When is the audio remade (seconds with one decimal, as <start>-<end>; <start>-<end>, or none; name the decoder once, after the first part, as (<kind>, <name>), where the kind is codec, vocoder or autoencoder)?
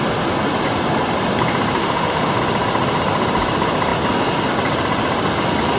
1.8-2.4 (autoencoder, DAC-VAE)